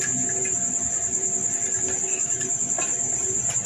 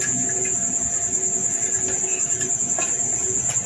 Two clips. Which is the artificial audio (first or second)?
second